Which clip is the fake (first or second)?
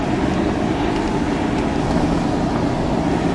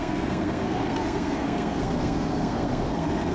second